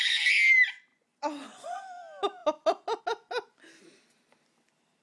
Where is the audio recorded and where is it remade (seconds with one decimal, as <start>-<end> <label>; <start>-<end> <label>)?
0.0-0.9 recorded; 0.9-1.8 remade; 1.8-5.0 recorded